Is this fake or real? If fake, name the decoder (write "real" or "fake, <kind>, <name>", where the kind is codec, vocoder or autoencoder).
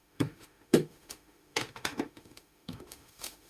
fake, autoencoder, DAC-VAE